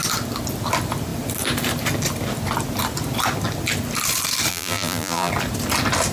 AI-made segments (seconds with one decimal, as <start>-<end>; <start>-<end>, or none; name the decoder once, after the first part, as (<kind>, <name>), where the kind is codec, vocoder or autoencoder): 4.5-5.3 (vocoder, BigVGAN v2)